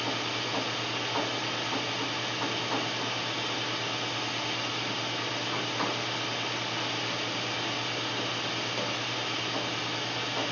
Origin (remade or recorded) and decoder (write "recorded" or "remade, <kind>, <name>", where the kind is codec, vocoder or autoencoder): recorded